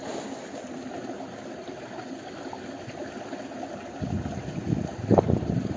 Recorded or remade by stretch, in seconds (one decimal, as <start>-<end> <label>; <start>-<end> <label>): 0.0-5.8 recorded